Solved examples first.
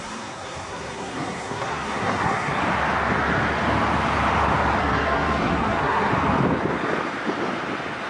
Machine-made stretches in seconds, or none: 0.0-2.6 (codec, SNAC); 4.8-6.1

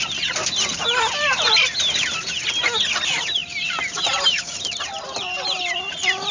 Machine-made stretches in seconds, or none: none

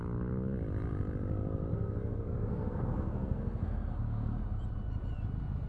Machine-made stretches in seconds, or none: 1.7-4.3 (codec, SNAC)

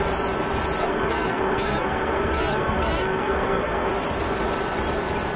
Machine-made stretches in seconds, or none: 0.8-3.9 (codec, SNAC)

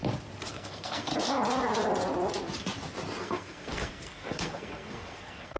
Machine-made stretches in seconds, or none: 0.5-1.1 (codec, SNAC); 3.2-5.6